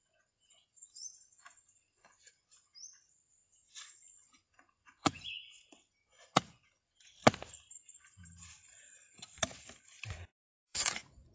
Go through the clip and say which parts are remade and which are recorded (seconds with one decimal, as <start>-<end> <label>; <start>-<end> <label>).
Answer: 0.0-2.7 remade; 2.7-3.3 recorded; 3.3-7.2 remade; 7.2-10.6 recorded; 10.6-11.3 remade